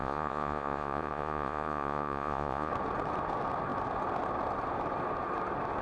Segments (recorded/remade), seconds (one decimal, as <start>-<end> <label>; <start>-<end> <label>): 0.0-2.7 remade; 2.7-5.8 recorded